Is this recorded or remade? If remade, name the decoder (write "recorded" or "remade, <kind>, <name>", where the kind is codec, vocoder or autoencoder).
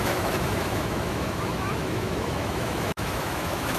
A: remade, autoencoder, DAC-VAE